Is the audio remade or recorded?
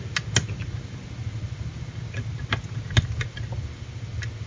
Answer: recorded